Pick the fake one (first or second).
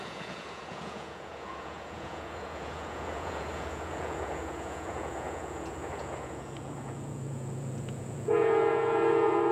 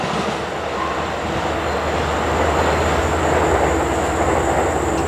first